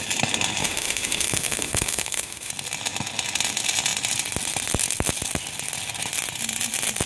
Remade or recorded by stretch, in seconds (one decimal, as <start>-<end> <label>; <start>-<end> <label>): 0.0-0.6 recorded; 0.6-2.5 remade; 2.5-7.1 recorded